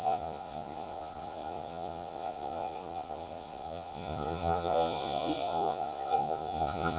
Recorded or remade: remade